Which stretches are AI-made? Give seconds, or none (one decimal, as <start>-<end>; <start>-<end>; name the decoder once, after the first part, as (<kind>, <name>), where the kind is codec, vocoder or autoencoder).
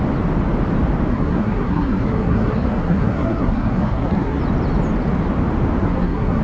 1.1-4.4 (codec, SNAC); 5.8-6.4